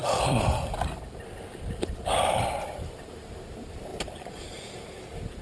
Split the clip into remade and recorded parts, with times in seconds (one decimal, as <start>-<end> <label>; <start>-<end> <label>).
0.0-3.2 remade; 3.2-3.9 recorded; 3.9-4.5 remade; 4.5-5.4 recorded